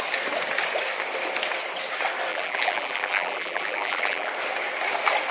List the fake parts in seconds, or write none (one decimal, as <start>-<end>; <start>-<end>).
2.3-4.3